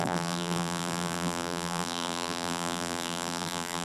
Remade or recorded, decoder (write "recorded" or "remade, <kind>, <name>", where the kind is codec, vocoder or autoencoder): remade, vocoder, BigVGAN v2